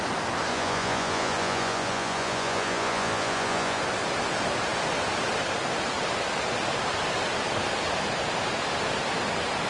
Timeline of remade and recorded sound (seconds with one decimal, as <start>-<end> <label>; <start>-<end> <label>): 0.0-0.5 recorded; 0.5-3.8 remade; 3.8-9.7 recorded